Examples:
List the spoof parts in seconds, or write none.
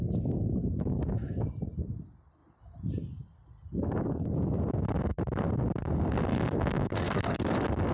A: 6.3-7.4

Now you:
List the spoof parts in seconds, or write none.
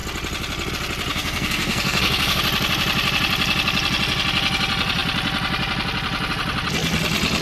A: 1.1-2.4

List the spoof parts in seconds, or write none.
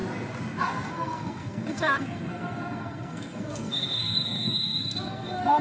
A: 0.6-5.6